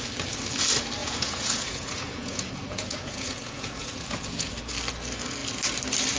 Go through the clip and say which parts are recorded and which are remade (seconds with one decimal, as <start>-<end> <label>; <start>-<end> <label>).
0.0-1.0 recorded; 1.0-4.7 remade; 4.7-6.2 recorded